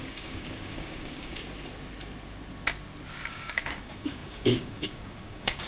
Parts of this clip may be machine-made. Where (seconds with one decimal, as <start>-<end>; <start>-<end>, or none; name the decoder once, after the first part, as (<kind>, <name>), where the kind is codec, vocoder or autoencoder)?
0.0-1.4 (codec, DAC); 3.1-5.7